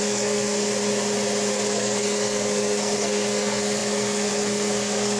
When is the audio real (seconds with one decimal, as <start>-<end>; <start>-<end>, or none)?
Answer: 0.7-1.5